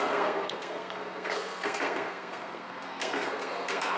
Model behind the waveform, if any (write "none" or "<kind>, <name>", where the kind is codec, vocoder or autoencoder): codec, SNAC